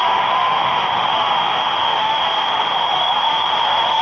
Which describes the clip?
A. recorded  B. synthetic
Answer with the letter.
B